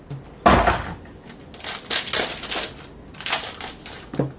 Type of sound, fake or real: real